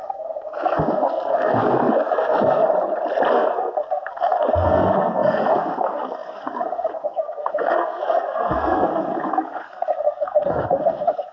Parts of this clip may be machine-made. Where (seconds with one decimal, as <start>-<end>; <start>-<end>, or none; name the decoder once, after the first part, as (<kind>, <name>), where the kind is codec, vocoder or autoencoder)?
0.0-2.6 (codec, SNAC); 3.3-11.3